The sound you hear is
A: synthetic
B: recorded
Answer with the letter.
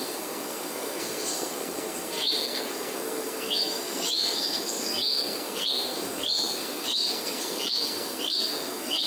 A